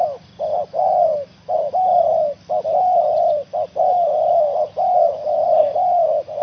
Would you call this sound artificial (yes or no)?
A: yes